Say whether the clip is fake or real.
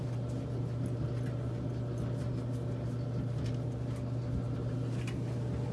real